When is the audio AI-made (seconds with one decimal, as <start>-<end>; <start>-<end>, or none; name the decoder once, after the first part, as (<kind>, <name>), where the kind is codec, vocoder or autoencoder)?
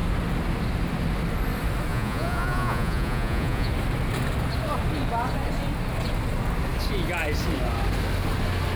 1.9-3.7 (vocoder, Vocos)